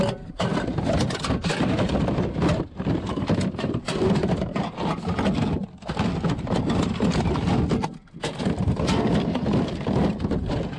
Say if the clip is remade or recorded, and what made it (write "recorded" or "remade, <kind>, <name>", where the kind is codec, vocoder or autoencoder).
recorded